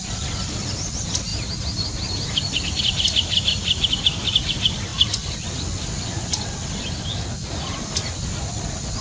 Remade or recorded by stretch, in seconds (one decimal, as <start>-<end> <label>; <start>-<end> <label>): 0.0-4.9 remade; 4.9-5.8 recorded; 5.8-6.8 remade; 6.8-9.0 recorded